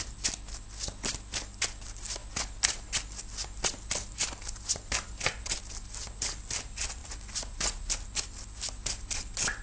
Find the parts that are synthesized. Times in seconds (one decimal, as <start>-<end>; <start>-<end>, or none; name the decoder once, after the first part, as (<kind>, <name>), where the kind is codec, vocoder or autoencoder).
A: none